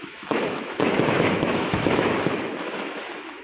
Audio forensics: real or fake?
fake